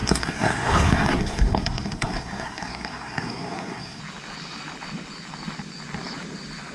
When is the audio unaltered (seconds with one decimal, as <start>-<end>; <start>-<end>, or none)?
4.0-6.7